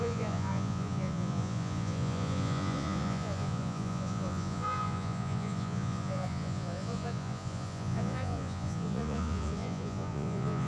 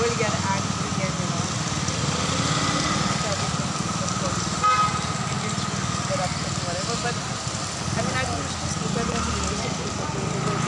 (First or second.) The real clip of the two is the second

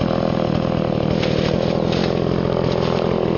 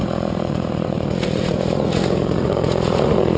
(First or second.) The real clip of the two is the first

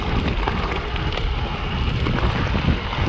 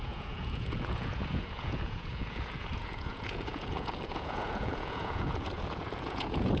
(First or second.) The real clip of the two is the first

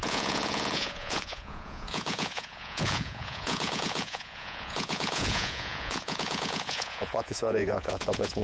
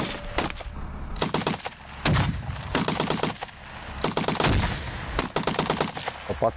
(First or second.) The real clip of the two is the second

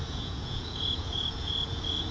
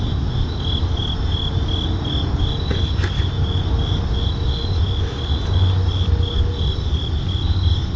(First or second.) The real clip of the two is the second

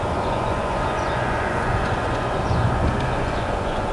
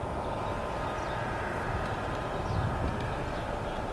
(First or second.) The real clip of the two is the second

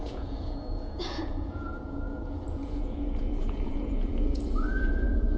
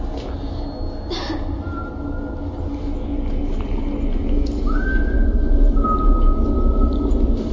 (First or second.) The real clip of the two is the second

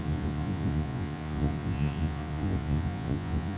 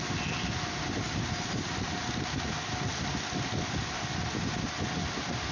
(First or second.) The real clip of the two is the second